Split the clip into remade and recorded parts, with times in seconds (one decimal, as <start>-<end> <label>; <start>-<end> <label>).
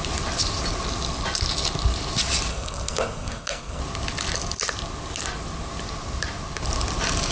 0.0-2.5 recorded; 2.5-3.8 remade; 3.8-7.3 recorded